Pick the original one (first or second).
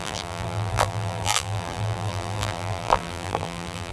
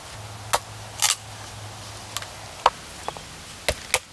second